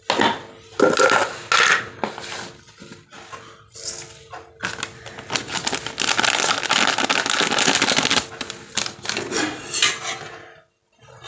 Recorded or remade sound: recorded